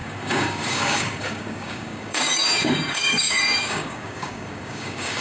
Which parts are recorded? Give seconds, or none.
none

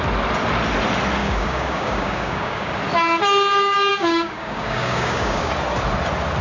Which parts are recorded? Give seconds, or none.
0.0-1.2; 2.7-3.9; 5.5-6.4

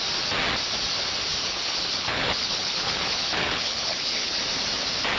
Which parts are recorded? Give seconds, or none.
0.0-1.3; 4.4-5.2